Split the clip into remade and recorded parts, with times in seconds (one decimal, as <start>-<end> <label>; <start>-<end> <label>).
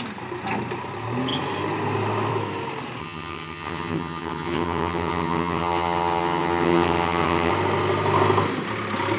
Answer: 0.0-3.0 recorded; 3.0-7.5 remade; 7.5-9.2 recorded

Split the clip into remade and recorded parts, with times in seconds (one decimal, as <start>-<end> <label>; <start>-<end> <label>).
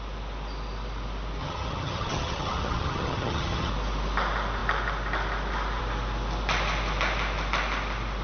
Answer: 0.0-1.4 recorded; 1.4-3.7 remade; 3.7-8.2 recorded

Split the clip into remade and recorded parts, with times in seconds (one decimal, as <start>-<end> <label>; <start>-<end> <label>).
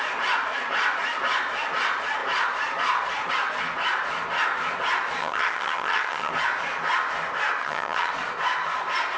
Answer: 0.0-5.2 recorded; 5.2-6.3 remade; 6.3-7.6 recorded; 7.6-8.1 remade; 8.1-9.2 recorded